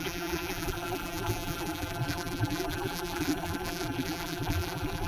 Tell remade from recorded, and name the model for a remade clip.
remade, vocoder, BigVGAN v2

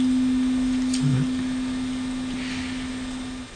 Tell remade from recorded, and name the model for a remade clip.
recorded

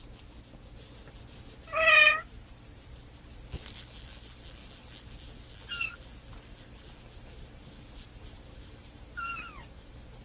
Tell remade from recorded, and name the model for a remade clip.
recorded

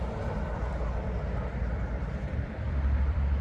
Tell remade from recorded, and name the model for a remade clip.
remade, vocoder, BigVGAN v2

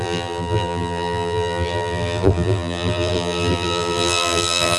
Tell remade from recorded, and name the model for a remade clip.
remade, vocoder, BigVGAN v2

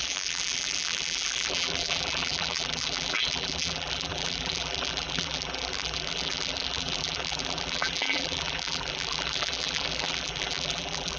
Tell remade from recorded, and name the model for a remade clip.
remade, vocoder, BigVGAN v2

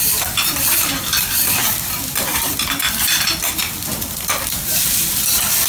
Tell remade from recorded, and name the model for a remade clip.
remade, vocoder, BigVGAN v2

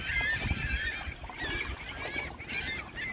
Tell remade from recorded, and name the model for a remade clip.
remade, vocoder, BigVGAN v2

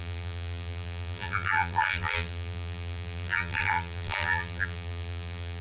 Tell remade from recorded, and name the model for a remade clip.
remade, vocoder, BigVGAN v2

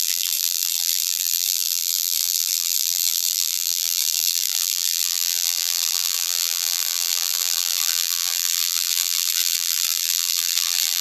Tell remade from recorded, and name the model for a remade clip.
remade, vocoder, BigVGAN v2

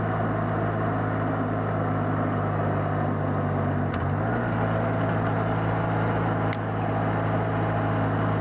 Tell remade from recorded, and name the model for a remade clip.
recorded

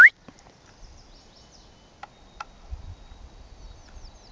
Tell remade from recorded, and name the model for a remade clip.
recorded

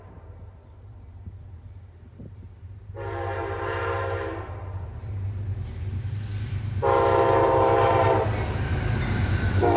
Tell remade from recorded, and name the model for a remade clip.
remade, vocoder, BigVGAN v2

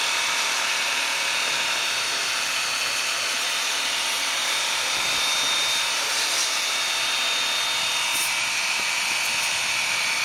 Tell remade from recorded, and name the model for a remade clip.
recorded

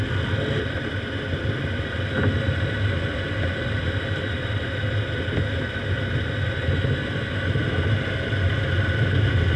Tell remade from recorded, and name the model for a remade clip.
recorded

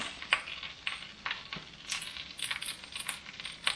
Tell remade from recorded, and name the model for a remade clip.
recorded